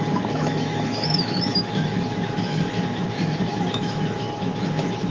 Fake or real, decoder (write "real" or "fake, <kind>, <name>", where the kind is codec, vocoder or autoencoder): fake, autoencoder, DAC-VAE